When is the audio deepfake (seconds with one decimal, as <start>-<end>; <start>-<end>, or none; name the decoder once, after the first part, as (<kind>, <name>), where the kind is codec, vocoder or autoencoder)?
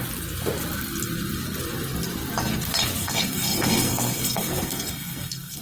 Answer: 3.0-5.6 (codec, SNAC)